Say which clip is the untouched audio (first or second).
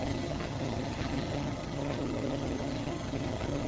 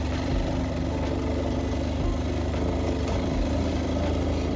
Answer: second